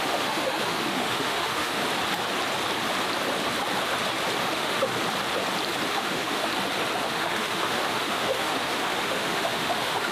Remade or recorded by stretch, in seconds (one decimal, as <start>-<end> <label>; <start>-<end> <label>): 0.0-1.8 remade; 1.8-4.4 recorded; 4.4-4.9 remade; 4.9-5.9 recorded; 5.9-6.5 remade; 6.5-7.0 recorded; 7.0-10.1 remade